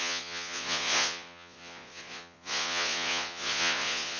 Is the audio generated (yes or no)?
yes